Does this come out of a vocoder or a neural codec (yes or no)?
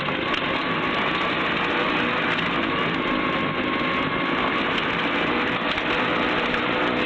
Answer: no